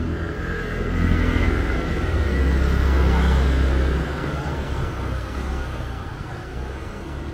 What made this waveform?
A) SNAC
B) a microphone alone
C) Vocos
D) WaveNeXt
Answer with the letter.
A